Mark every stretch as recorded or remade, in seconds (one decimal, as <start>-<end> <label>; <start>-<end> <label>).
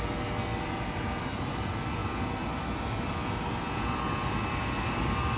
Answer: 0.0-5.4 recorded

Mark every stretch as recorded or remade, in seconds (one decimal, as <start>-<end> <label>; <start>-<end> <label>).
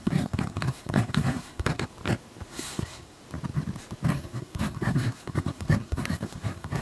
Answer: 0.0-1.9 remade; 1.9-2.5 recorded; 2.5-3.2 remade; 3.2-4.1 recorded; 4.1-6.8 remade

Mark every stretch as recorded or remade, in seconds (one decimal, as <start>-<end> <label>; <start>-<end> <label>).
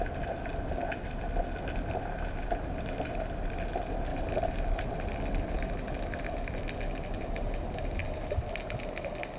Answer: 0.0-9.4 recorded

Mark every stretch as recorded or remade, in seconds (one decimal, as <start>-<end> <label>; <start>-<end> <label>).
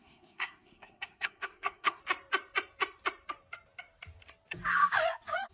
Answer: 0.0-2.0 remade; 2.0-5.5 recorded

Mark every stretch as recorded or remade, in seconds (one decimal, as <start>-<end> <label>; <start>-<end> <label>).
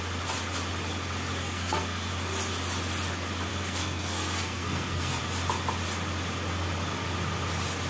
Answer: 0.0-1.4 recorded; 1.4-2.1 remade; 2.1-3.5 recorded; 3.5-5.2 remade; 5.2-7.9 recorded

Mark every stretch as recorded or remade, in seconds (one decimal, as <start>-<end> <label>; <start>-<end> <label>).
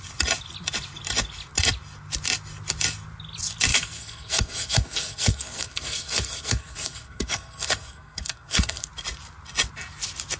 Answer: 0.0-3.7 recorded; 3.7-8.9 remade; 8.9-10.4 recorded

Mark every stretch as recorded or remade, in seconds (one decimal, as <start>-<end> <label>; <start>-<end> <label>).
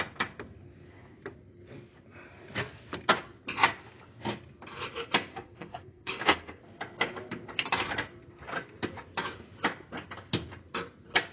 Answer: 0.0-5.3 recorded; 5.3-6.6 remade; 6.6-11.3 recorded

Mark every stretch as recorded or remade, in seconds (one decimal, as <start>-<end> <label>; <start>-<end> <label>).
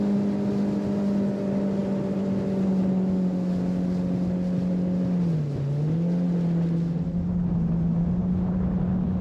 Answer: 0.0-9.2 recorded